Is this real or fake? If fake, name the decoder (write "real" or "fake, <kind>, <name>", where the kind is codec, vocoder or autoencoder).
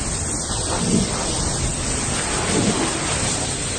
real